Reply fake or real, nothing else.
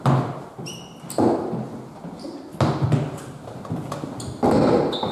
real